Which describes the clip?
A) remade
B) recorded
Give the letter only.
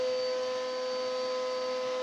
B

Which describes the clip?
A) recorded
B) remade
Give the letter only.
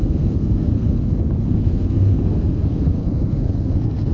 B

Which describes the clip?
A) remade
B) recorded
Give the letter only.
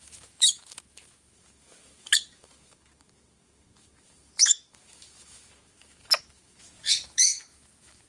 A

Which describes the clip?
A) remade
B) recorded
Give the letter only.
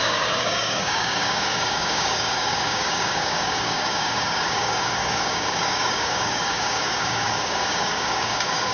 A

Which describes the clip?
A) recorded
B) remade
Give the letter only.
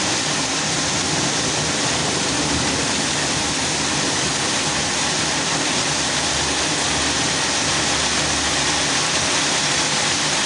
A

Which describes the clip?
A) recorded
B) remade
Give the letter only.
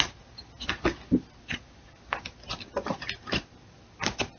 A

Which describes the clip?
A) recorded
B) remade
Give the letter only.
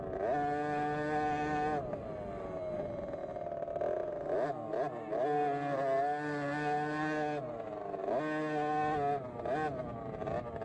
A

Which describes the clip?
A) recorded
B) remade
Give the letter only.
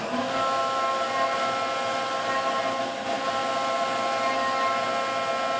A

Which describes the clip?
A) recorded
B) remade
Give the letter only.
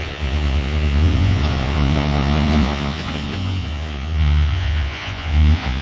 B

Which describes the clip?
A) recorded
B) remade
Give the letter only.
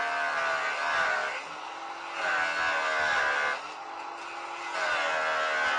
A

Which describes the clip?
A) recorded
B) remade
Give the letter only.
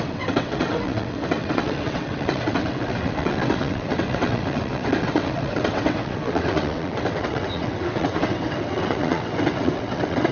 B